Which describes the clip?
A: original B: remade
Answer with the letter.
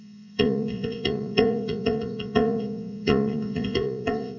B